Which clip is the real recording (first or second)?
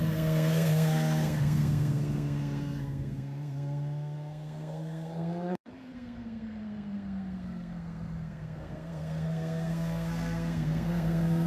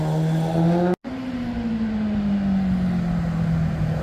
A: second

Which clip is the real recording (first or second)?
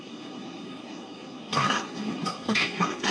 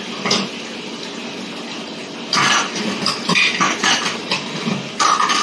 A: second